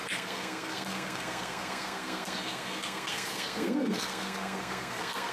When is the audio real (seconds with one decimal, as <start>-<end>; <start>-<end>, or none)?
none